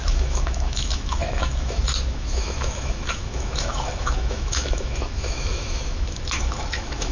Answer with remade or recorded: remade